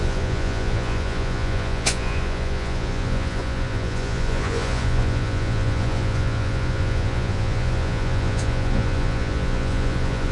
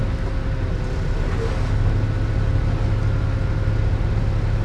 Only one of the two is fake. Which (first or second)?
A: first